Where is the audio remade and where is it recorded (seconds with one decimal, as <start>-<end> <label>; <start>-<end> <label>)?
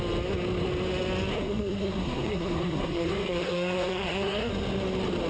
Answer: 0.0-1.3 recorded; 1.3-4.5 remade; 4.5-5.3 recorded